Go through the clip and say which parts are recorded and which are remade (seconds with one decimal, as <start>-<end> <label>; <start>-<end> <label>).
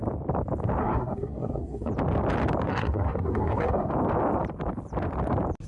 0.0-0.8 recorded; 0.8-1.9 remade; 1.9-2.7 recorded; 2.7-3.9 remade; 3.9-5.7 recorded